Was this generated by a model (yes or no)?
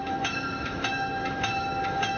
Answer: yes